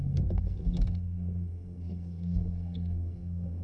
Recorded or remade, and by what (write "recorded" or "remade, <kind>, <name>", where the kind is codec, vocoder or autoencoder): remade, codec, SNAC